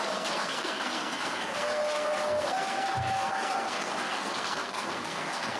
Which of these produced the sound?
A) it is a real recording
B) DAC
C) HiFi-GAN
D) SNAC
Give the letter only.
D